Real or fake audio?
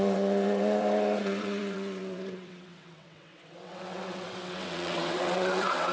fake